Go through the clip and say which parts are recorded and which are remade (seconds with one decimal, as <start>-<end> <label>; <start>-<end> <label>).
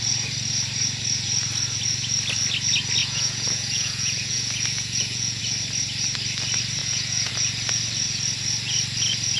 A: 0.0-3.0 recorded; 3.0-5.4 remade; 5.4-6.8 recorded; 6.8-7.3 remade; 7.3-9.4 recorded